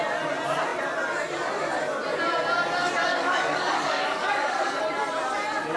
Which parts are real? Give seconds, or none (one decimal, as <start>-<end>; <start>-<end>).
0.0-3.1; 4.8-5.8